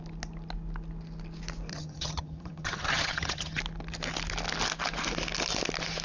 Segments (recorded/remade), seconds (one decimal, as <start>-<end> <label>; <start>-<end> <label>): 0.0-1.7 recorded; 1.7-3.6 remade; 3.6-6.0 recorded